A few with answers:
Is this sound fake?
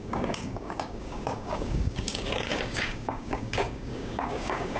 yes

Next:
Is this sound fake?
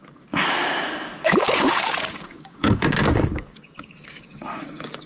yes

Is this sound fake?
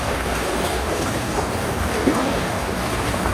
yes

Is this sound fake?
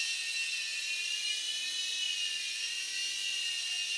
no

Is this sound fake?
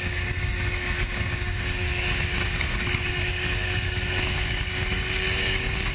yes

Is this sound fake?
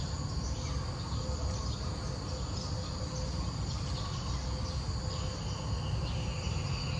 no